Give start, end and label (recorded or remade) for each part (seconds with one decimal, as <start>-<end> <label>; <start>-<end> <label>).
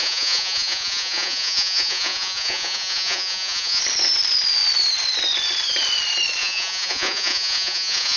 0.0-3.8 remade; 3.8-6.4 recorded; 6.4-8.2 remade